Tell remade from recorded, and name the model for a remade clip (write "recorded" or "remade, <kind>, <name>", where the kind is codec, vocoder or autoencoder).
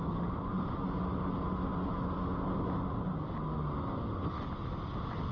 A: recorded